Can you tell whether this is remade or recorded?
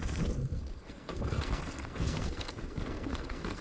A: remade